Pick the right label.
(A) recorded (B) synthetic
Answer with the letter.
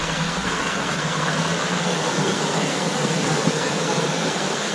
B